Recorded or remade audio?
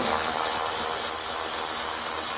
recorded